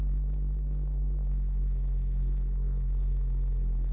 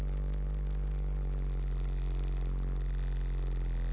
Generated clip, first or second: first